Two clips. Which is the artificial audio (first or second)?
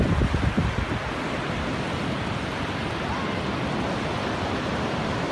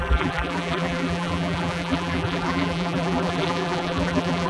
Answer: second